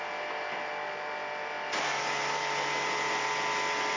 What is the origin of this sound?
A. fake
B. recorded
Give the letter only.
B